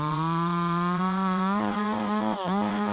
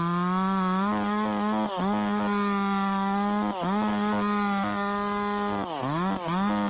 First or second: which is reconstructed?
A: first